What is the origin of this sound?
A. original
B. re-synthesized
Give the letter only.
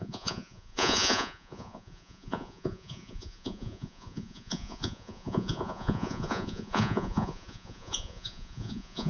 B